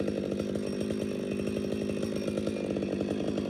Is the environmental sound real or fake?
real